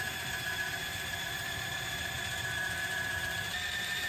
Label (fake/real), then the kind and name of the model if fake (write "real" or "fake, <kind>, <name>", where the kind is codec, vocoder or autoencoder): fake, vocoder, BigVGAN v2